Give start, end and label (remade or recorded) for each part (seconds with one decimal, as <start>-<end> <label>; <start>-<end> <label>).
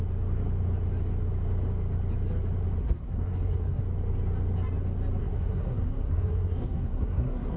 0.0-2.8 recorded; 2.8-3.8 remade; 3.8-5.2 recorded; 5.2-7.6 remade